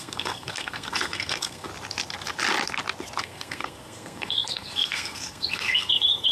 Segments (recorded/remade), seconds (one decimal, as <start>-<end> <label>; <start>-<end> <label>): 0.0-1.7 remade; 1.7-3.2 recorded; 3.2-6.3 remade